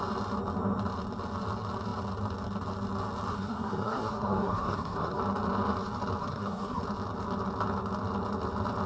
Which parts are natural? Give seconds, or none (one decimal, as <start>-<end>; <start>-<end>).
0.0-3.3; 5.2-6.2; 6.8-8.9